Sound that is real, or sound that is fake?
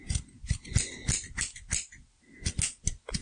real